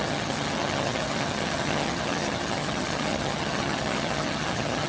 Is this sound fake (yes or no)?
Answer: yes